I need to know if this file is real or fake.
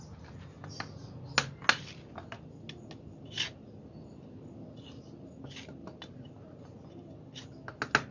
real